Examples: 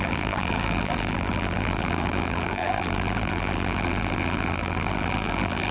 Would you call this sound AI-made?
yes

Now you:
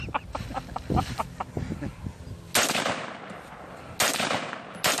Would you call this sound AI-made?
no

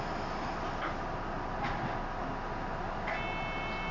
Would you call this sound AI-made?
no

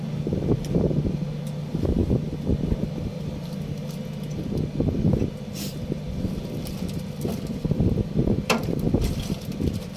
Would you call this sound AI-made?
no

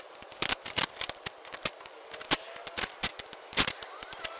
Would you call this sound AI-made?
yes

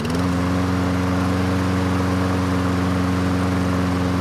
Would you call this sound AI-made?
no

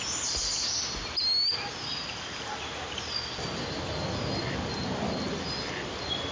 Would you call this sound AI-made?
no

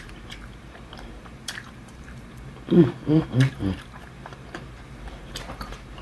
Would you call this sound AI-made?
yes